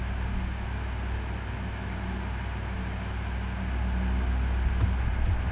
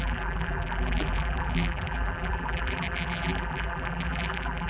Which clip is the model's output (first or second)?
second